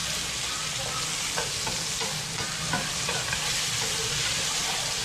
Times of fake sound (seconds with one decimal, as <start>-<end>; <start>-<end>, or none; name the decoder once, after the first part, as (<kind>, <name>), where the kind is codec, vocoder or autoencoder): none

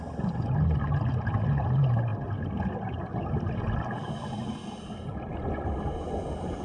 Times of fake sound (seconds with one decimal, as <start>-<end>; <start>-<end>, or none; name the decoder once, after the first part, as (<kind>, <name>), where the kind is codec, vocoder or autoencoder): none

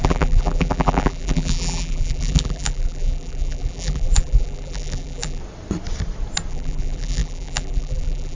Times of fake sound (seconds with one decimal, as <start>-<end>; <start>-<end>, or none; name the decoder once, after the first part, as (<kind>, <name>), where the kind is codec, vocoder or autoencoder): 0.0-5.4 (vocoder, BigVGAN v2); 6.5-8.3

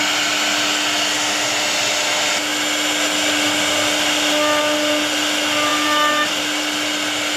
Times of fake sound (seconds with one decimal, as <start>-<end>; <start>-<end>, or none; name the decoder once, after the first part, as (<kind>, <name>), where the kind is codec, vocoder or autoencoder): none

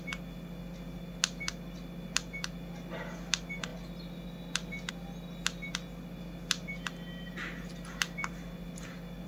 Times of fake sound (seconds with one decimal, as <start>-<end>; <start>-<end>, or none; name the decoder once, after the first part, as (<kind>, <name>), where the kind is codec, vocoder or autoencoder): none